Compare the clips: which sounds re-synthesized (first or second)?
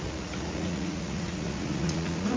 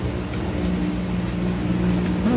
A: first